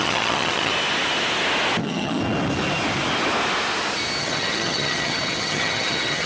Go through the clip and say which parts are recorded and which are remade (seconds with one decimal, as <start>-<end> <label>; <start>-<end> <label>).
0.0-0.7 remade; 0.7-1.8 recorded; 1.8-2.2 remade; 2.2-4.2 recorded; 4.2-6.3 remade